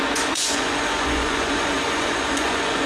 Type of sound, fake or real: fake